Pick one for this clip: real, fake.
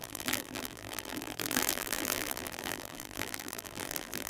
fake